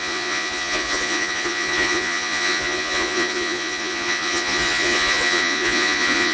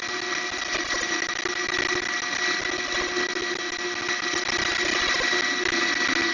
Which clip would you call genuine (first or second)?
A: second